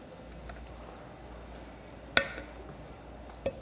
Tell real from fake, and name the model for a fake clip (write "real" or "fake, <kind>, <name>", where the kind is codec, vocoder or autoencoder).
real